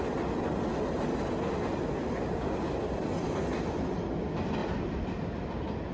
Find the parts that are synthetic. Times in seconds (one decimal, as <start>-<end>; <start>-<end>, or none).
none